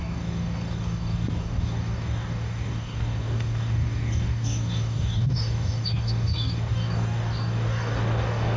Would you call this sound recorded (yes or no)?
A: no